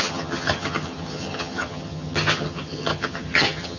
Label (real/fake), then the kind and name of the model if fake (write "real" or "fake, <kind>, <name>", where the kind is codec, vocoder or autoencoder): fake, vocoder, HiFi-GAN